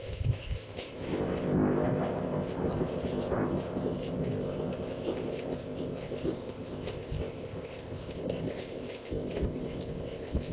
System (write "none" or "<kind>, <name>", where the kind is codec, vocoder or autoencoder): codec, ZipCodec